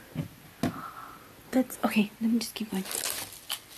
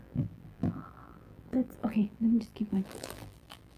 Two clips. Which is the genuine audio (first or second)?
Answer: first